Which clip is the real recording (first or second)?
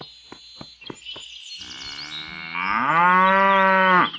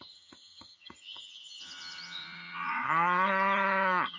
first